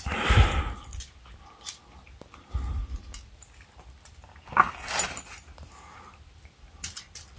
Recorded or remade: remade